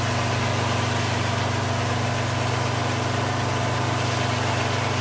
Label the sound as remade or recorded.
recorded